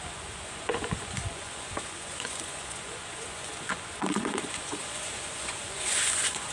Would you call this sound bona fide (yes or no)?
no